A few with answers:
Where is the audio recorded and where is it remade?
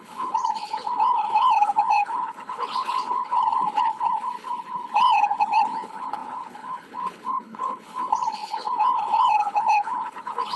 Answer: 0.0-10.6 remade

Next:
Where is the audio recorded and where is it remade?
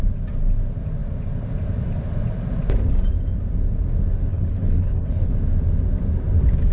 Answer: 0.0-4.3 recorded; 4.3-5.3 remade; 5.3-6.7 recorded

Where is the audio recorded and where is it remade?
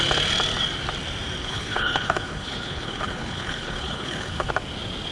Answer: 0.0-1.4 recorded; 1.4-4.5 remade; 4.5-5.1 recorded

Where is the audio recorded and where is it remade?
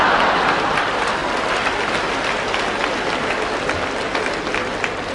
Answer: 0.0-5.1 recorded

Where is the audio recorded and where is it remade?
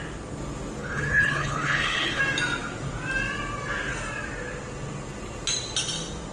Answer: 0.0-0.8 recorded; 0.8-2.2 remade; 2.2-6.3 recorded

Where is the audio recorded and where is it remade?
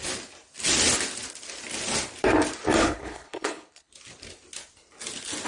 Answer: 0.0-2.8 recorded; 2.8-3.9 remade; 3.9-5.5 recorded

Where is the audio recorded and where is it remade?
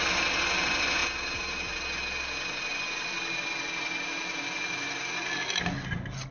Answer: 0.0-6.3 recorded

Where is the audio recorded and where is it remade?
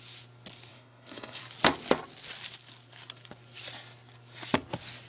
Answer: 0.0-0.7 recorded; 0.7-1.4 remade; 1.4-5.1 recorded